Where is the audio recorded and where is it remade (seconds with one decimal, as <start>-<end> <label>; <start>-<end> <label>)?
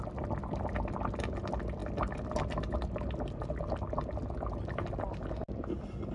0.0-6.1 recorded